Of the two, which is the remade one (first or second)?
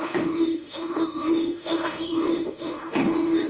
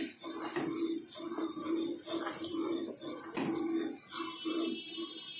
first